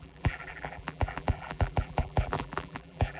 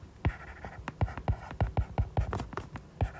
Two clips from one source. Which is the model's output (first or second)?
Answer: first